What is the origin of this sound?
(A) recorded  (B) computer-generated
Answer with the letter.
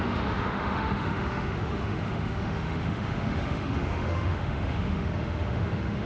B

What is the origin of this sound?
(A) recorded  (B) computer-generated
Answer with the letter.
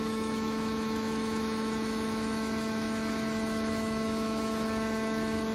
B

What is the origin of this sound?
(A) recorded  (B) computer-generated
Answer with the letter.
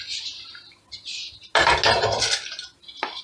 A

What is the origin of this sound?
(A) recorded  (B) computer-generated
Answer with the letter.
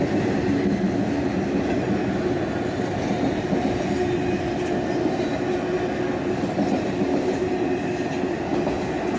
A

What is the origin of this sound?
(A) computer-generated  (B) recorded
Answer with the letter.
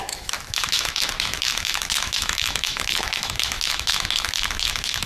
A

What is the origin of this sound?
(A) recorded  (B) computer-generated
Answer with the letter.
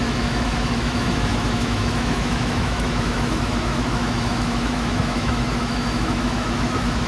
B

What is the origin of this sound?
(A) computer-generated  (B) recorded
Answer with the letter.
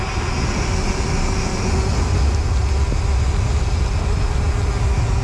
B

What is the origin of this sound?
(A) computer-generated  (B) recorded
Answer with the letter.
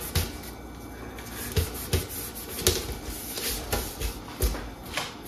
B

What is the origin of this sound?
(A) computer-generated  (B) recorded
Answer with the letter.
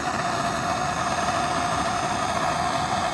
B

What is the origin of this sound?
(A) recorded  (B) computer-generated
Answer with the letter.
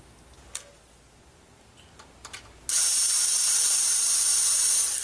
A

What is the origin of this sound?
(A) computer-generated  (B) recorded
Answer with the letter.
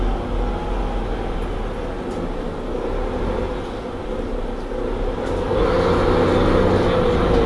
B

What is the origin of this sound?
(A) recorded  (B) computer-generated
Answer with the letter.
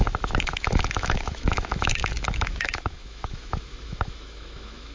B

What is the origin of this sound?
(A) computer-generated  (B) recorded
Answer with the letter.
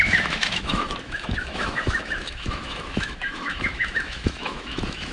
A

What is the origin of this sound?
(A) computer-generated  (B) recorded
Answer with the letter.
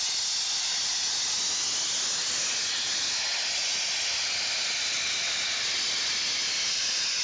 B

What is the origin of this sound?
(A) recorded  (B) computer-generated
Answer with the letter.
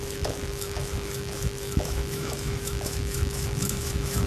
B